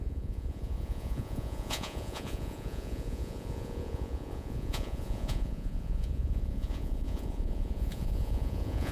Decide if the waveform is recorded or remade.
remade